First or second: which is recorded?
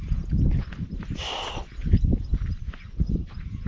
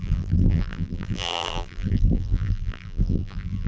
first